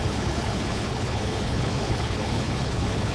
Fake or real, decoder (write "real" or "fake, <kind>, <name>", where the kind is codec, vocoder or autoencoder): fake, codec, HILCodec